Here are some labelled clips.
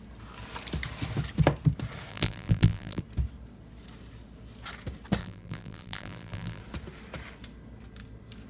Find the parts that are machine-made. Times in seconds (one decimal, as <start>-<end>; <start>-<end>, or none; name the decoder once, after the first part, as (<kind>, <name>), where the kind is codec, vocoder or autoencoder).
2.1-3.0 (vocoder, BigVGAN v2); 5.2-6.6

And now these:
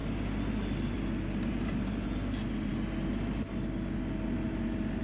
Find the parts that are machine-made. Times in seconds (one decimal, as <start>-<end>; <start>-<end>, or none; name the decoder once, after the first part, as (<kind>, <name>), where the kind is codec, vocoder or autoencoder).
none

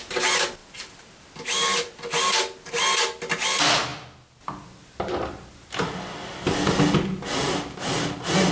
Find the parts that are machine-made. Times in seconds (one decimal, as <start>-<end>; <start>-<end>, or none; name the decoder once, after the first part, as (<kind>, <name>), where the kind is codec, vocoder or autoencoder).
none

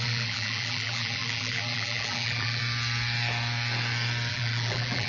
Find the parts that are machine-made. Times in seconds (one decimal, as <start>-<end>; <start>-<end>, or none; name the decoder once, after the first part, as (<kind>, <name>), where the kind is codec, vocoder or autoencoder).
0.0-2.6 (vocoder, BigVGAN v2); 4.3-5.1

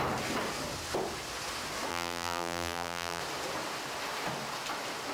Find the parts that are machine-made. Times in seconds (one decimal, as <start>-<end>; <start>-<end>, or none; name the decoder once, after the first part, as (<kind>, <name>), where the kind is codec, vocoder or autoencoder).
1.9-3.2 (vocoder, BigVGAN v2)

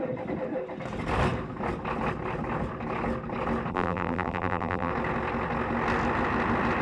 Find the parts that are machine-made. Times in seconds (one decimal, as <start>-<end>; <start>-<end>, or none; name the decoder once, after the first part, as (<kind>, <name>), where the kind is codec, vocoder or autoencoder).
3.7-4.9 (vocoder, BigVGAN v2)

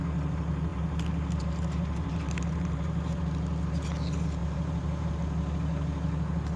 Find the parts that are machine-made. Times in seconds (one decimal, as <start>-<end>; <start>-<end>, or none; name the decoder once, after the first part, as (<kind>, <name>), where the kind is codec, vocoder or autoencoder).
0.7-3.2 (vocoder, BigVGAN v2); 4.4-5.1